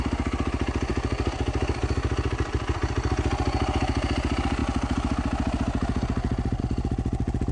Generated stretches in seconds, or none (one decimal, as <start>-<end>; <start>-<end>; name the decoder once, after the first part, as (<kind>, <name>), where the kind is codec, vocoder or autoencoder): none